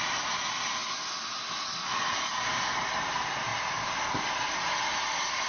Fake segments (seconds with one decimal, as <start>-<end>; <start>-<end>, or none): none